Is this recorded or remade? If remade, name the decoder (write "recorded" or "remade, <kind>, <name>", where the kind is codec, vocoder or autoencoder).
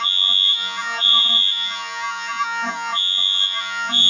remade, vocoder, Vocos